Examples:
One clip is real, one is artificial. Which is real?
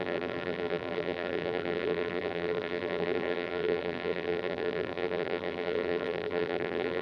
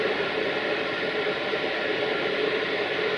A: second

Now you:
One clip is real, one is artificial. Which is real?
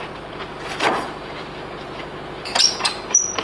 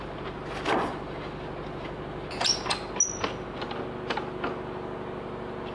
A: second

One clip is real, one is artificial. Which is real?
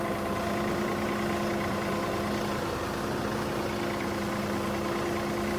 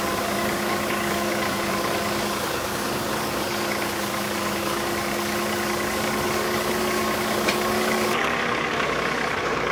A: first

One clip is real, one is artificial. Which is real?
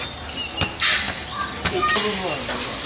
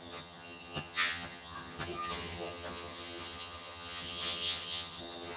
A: first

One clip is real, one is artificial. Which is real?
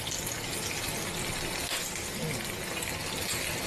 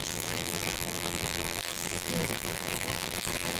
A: first